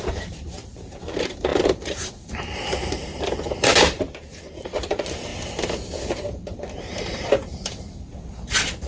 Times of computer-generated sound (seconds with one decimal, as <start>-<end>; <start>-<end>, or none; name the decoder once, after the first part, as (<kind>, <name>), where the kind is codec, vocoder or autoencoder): 0.0-3.7 (vocoder, BigVGAN v2); 4.3-5.3; 6.8-8.9